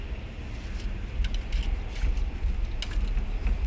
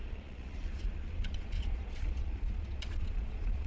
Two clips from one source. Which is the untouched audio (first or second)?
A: first